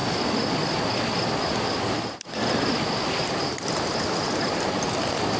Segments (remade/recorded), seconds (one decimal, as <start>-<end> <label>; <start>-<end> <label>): 0.0-5.4 recorded